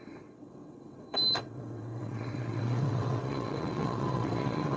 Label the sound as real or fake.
fake